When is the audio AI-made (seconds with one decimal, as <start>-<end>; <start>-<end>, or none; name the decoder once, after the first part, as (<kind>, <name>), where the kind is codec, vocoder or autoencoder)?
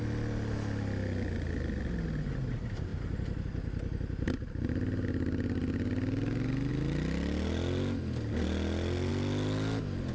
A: none